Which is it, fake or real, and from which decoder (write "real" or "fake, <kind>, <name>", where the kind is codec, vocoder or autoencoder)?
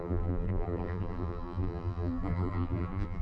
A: fake, vocoder, BigVGAN v2